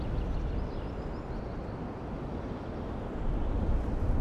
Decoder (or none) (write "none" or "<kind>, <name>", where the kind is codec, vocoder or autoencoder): none